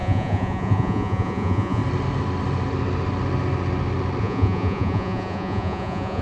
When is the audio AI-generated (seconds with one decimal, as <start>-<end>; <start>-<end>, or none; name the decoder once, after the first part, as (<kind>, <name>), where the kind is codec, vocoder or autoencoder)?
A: 0.0-1.8 (vocoder, Vocos); 4.2-6.2